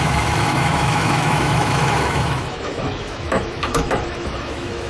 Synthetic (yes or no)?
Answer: yes